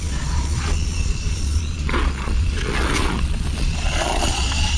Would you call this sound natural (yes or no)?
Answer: no